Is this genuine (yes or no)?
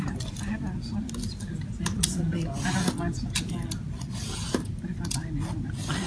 yes